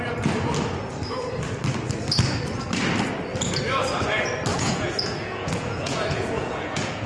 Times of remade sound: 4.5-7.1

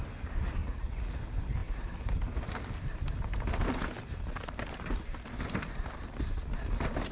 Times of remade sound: 0.6-1.1

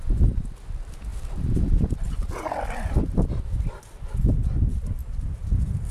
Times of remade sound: none

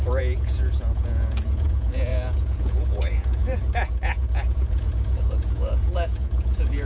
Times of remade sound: 0.0-6.9